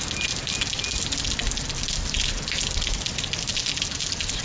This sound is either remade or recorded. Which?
recorded